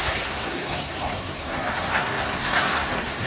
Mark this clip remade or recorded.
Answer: remade